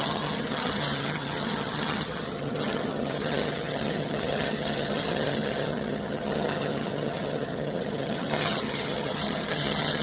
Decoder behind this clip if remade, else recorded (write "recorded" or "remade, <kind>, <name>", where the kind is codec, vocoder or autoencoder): remade, vocoder, HiFi-GAN